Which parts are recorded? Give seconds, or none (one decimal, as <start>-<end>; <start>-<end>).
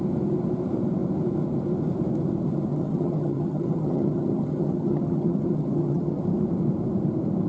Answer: 0.0-2.7; 6.2-7.5